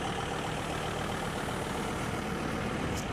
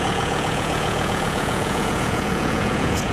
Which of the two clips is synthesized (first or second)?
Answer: second